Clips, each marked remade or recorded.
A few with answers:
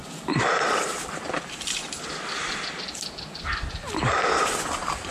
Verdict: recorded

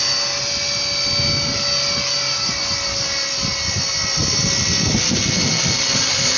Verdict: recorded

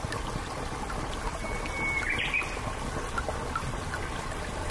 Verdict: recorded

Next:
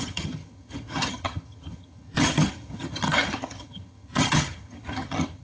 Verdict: remade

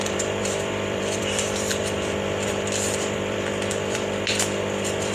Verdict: remade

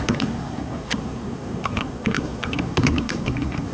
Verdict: remade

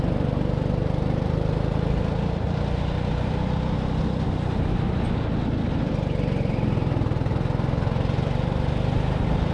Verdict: recorded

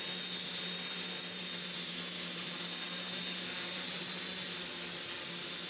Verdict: recorded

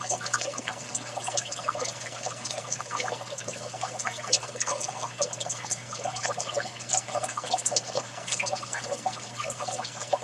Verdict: remade